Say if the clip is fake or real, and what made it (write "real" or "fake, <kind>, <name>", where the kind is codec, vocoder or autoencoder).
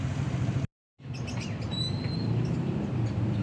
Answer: real